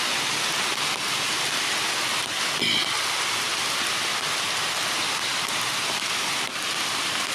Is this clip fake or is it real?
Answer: real